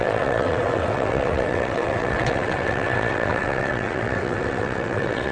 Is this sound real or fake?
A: fake